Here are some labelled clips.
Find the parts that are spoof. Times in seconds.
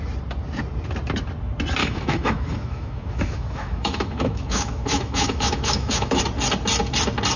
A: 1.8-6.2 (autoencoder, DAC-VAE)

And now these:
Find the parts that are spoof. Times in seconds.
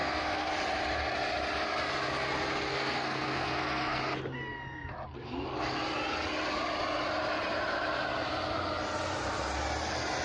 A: 0.0-0.5 (codec, SNAC); 2.7-4.0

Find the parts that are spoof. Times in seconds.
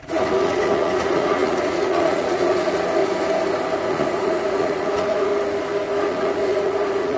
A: 0.0-3.0 (vocoder, Vocos); 3.9-5.3; 6.0-7.2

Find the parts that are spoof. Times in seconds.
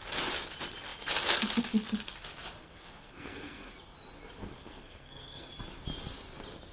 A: 2.6-3.7 (codec, SNAC); 4.4-5.5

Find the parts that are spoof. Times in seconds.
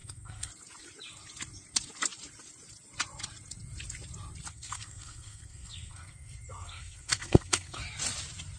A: 0.0-0.5 (codec, SNAC); 4.5-7.8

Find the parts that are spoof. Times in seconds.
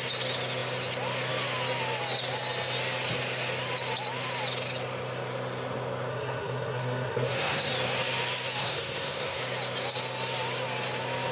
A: 6.1-7.7 (codec, SNAC); 8.6-9.4